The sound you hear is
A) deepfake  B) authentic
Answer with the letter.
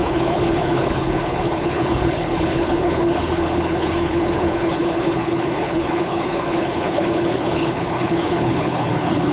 A